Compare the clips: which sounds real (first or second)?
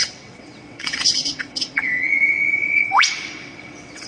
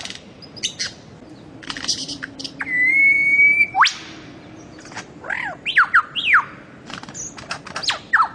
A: second